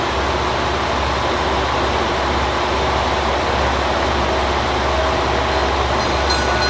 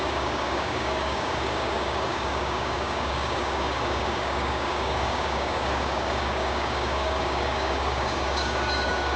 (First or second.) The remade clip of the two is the second